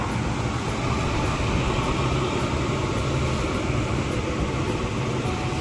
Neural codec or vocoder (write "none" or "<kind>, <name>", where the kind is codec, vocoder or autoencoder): none